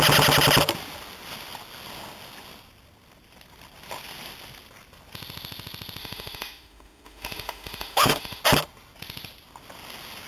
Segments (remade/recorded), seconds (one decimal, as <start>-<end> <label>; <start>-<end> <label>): 0.0-6.0 recorded; 6.0-8.4 remade; 8.4-10.3 recorded